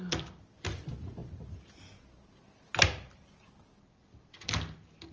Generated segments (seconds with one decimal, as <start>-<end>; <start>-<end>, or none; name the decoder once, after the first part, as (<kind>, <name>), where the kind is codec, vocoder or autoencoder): none